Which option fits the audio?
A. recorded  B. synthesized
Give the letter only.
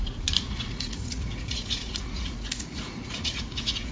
B